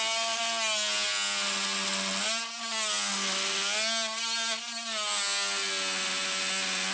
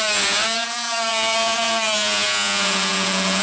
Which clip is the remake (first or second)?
second